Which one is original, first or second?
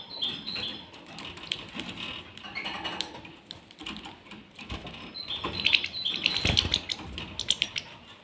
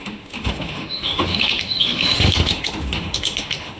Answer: first